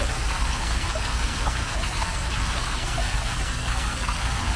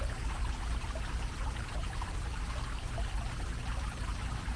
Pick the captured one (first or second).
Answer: second